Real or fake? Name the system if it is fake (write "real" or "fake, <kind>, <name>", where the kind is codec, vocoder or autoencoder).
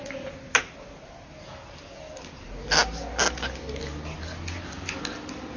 real